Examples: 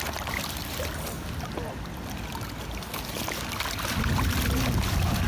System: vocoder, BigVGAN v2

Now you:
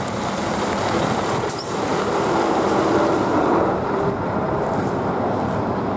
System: vocoder, BigVGAN v2